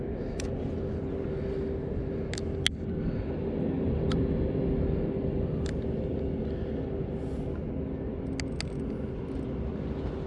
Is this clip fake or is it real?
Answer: real